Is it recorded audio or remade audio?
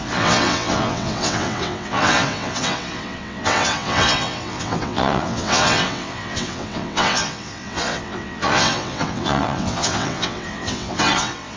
remade